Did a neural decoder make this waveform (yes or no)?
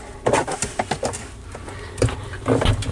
no